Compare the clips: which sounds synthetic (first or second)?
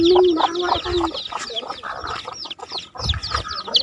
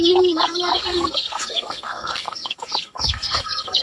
second